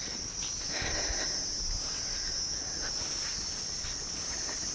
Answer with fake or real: real